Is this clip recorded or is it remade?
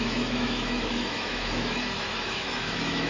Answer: remade